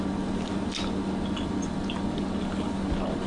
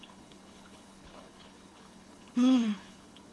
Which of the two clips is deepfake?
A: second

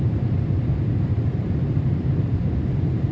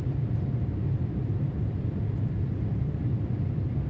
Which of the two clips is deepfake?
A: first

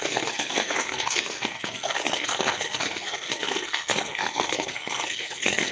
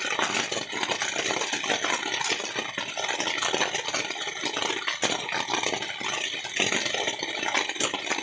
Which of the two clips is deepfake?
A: first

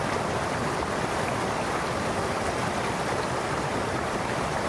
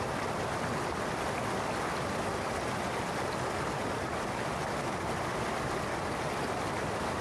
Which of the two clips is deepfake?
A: first